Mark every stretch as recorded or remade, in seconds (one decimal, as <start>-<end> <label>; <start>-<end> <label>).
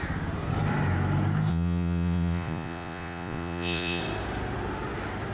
0.0-1.5 recorded; 1.5-4.0 remade; 4.0-5.3 recorded